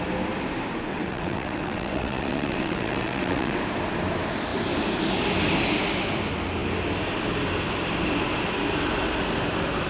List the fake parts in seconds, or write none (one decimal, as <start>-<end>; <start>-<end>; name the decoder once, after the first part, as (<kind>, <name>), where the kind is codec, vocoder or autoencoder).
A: 0.9-3.6 (vocoder, WaveNeXt)